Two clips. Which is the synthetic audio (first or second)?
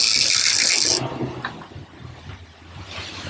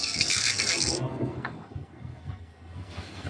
second